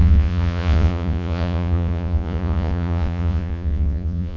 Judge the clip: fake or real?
fake